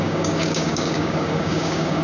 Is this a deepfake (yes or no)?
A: yes